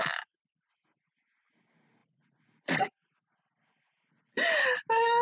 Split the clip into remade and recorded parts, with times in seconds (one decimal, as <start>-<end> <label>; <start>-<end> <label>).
0.0-2.0 recorded; 2.0-4.1 remade; 4.1-5.2 recorded